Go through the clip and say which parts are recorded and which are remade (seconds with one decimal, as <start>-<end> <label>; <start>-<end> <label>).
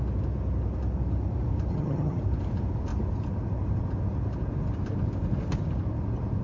0.0-1.7 recorded; 1.7-2.2 remade; 2.2-6.4 recorded